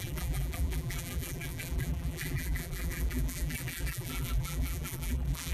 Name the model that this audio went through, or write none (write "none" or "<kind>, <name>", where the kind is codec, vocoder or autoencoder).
vocoder, BigVGAN v2